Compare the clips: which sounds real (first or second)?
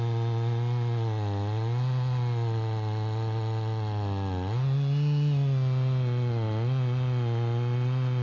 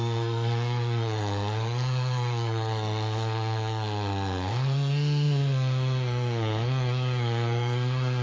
first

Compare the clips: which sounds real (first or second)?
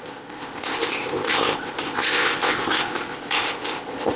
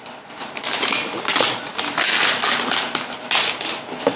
second